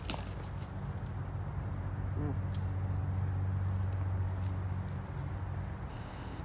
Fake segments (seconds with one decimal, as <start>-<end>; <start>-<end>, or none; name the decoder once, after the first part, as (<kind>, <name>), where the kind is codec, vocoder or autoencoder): 5.9-6.4 (codec, ZipCodec)